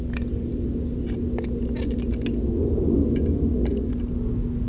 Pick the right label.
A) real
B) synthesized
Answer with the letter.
A